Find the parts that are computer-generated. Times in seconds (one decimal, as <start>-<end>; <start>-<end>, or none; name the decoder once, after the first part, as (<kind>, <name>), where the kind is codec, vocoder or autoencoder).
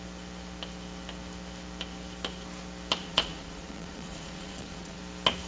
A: 3.0-5.0 (vocoder, Vocos)